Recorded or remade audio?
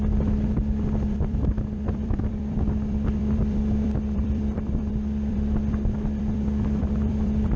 remade